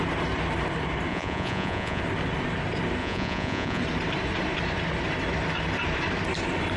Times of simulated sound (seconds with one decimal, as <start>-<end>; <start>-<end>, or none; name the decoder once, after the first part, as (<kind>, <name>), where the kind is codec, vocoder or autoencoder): 1.1-2.0 (vocoder, Vocos); 3.0-3.8